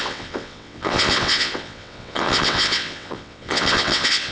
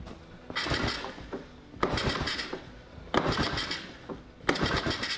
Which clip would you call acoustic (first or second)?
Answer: second